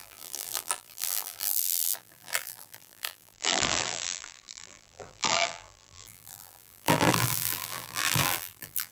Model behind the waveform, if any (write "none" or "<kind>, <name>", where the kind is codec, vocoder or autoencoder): vocoder, BigVGAN v2